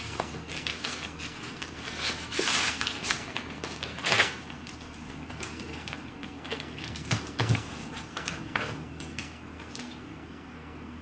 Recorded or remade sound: remade